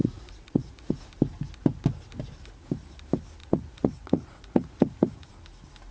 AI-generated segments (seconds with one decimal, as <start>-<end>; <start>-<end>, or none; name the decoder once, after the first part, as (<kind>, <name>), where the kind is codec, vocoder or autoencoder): 0.0-1.0 (vocoder, Vocos); 3.4-5.3

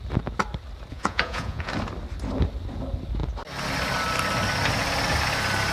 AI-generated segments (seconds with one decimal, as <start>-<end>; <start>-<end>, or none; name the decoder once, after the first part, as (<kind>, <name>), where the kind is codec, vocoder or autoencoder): 0.9-1.7 (vocoder, Vocos)

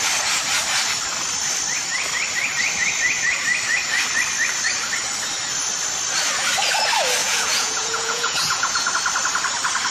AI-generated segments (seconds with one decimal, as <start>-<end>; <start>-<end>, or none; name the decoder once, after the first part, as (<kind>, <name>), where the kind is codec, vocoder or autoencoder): 7.2-8.9 (vocoder, Vocos)

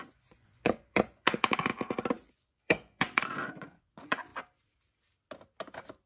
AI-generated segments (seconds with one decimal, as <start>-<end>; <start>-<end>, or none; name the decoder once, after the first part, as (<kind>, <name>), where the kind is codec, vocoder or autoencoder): 0.0-1.7 (vocoder, Vocos); 2.3-4.3